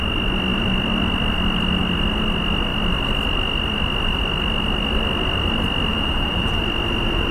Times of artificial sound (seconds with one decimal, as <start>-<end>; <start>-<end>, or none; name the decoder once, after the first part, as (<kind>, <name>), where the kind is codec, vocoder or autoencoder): 5.9-6.6 (vocoder, BigVGAN v2)